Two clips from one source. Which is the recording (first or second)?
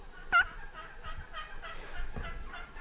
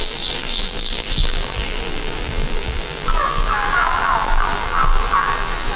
first